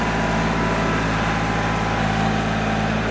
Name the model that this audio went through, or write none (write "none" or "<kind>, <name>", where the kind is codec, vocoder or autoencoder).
none